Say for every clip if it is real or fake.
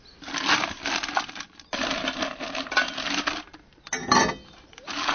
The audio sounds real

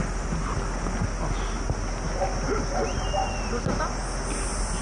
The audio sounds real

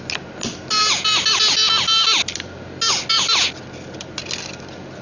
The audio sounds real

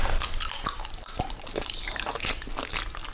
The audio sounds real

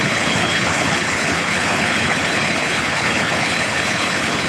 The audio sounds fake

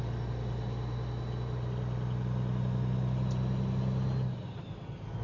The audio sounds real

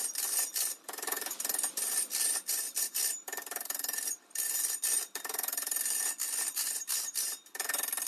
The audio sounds fake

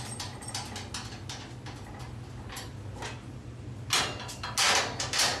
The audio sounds real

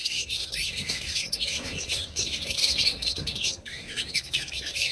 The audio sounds fake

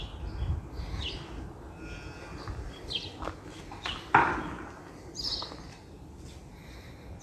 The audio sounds real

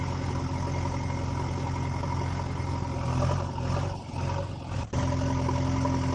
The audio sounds real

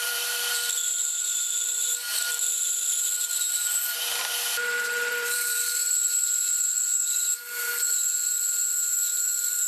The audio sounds fake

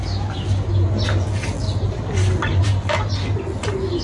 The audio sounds real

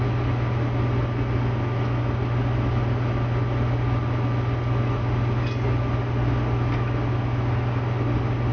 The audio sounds real